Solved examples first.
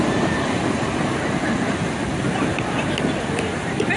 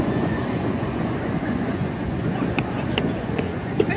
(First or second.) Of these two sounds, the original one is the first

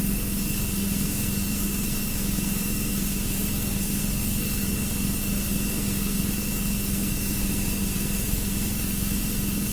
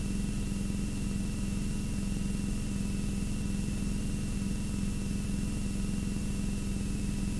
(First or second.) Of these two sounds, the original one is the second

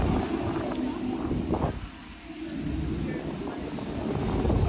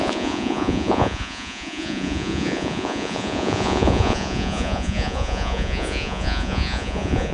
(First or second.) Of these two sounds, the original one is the first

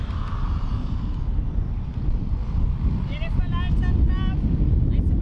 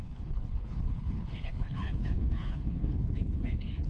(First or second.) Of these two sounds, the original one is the first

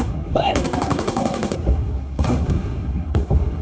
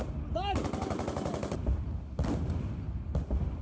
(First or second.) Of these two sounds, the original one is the second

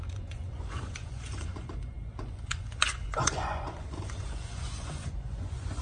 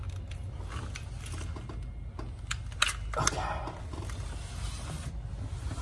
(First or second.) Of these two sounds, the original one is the second